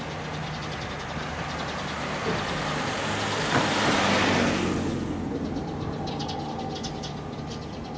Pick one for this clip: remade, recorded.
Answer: recorded